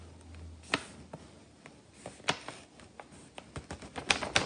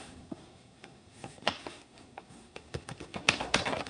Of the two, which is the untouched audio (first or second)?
first